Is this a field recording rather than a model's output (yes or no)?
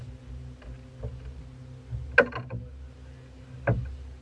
yes